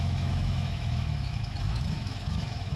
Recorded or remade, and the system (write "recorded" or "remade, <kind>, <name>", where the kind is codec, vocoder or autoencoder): remade, autoencoder, DAC-VAE